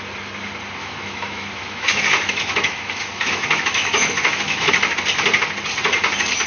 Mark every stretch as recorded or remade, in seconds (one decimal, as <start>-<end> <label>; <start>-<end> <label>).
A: 0.0-0.8 recorded; 0.8-4.7 remade; 4.7-6.5 recorded